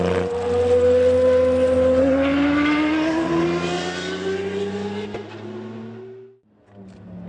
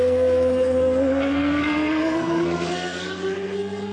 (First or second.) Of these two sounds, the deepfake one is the second